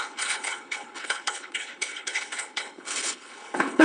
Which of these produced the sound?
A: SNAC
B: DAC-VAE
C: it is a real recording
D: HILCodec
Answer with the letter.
D